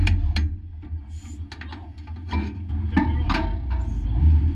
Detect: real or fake real